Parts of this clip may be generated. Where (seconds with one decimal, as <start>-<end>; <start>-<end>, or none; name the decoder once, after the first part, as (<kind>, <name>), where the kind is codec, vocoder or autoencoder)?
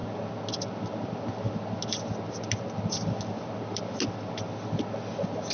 none